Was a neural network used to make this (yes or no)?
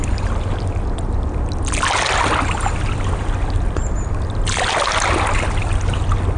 no